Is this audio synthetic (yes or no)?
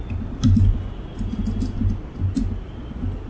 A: no